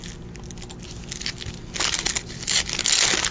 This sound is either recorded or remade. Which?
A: recorded